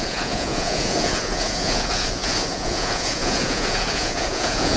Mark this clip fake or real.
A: fake